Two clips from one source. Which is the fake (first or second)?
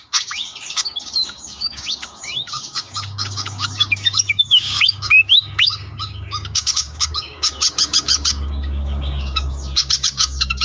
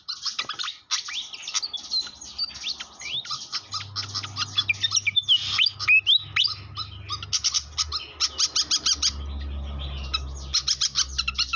first